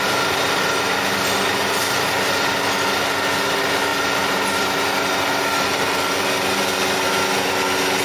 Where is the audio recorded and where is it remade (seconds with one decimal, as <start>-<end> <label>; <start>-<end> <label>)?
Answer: 0.0-8.0 recorded